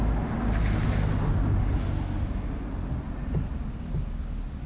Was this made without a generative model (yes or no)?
yes